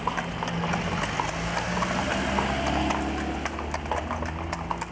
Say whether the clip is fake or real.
real